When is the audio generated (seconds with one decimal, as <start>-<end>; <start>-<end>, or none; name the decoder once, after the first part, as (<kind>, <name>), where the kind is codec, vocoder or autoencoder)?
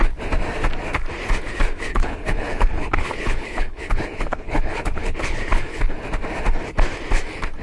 1.9-5.8 (codec, HILCodec)